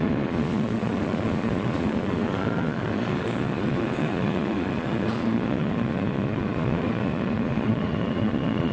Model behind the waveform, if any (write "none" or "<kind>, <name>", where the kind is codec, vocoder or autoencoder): vocoder, Vocos